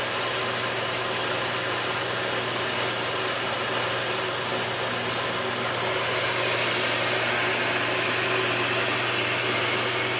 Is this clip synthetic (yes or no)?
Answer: no